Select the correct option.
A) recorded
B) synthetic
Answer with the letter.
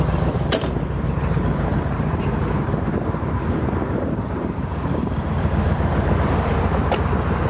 B